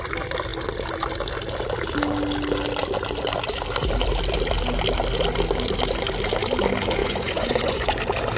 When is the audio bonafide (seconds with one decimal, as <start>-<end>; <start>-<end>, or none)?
0.0-7.0; 8.0-8.4